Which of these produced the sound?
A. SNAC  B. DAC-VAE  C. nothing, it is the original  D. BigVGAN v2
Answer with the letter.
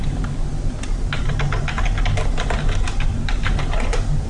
C